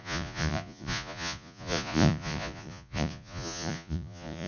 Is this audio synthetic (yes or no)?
yes